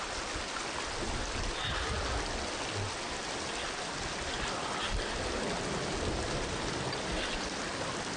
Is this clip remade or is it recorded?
recorded